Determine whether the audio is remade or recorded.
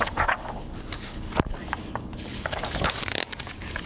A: remade